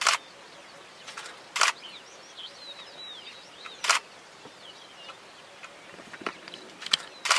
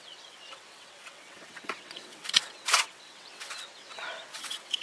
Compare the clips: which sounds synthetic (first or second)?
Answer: second